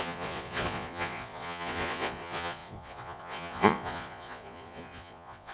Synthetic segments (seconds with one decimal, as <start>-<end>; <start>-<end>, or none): 0.0-5.5